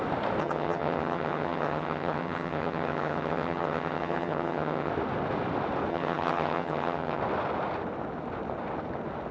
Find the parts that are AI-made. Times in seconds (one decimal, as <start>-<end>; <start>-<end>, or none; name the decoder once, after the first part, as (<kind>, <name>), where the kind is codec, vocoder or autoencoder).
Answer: 0.4-4.9 (vocoder, HiFi-GAN); 5.9-7.2